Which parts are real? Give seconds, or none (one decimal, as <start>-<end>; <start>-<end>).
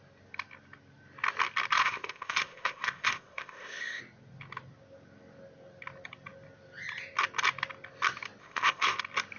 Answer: 0.0-1.8; 4.0-8.4; 9.0-9.4